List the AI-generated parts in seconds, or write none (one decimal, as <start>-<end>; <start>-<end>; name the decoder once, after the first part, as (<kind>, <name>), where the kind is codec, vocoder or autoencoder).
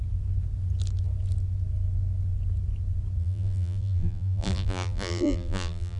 3.2-6.0 (vocoder, BigVGAN v2)